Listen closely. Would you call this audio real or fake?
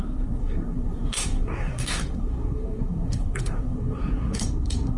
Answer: fake